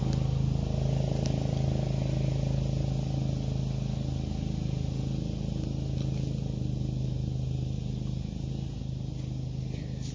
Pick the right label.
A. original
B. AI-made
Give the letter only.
A